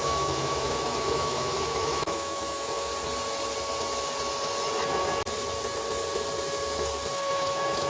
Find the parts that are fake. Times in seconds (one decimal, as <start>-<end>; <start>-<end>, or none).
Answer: 0.0-2.9; 7.3-7.9

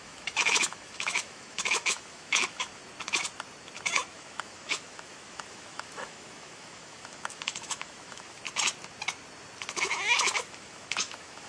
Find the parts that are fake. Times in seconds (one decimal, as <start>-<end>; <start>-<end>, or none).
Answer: 0.0-2.8; 4.1-8.4; 9.8-11.5